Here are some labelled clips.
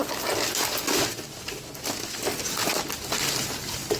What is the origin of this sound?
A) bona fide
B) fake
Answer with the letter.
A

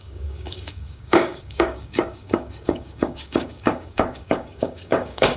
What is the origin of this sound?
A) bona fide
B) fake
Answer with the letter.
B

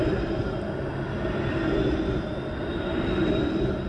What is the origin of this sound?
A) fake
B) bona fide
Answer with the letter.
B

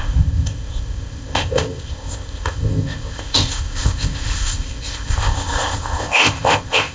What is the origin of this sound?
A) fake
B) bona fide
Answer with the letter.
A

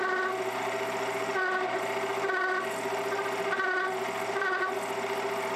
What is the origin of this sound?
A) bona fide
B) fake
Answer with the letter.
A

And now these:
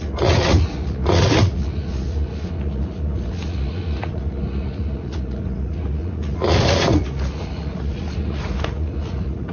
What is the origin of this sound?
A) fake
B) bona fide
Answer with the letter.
A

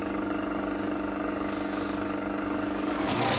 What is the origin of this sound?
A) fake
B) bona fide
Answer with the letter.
A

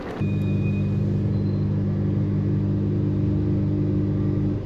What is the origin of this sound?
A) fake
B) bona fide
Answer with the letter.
B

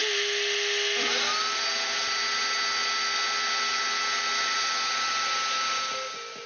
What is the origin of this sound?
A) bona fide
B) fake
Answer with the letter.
A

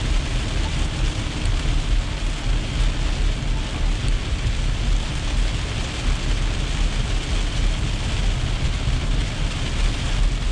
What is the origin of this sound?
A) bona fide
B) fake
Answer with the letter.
A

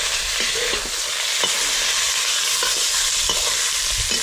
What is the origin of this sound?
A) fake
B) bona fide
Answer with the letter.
B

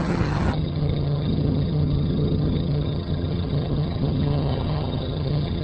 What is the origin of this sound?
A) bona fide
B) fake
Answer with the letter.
B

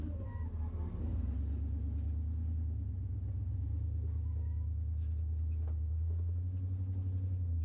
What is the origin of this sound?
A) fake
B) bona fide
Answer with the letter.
B